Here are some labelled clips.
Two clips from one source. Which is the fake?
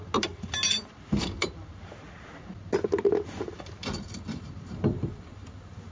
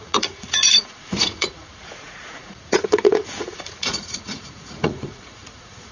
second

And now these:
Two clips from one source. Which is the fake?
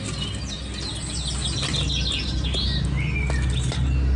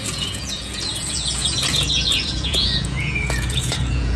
second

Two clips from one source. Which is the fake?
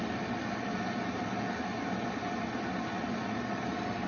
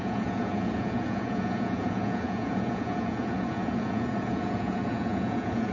second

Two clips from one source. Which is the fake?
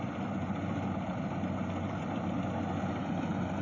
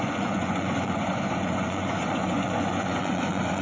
second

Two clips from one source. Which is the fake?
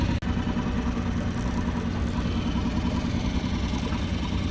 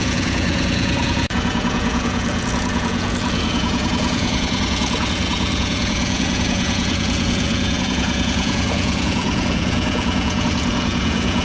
second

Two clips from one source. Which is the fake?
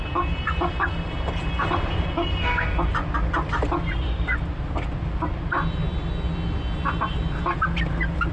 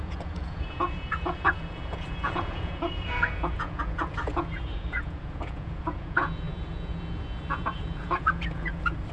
second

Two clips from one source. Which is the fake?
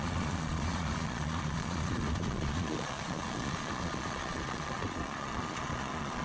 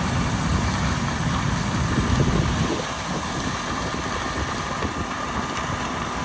first